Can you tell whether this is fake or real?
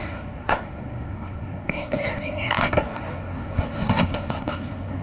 fake